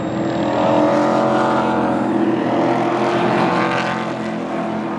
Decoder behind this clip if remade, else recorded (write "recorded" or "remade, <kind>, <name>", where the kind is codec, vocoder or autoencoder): recorded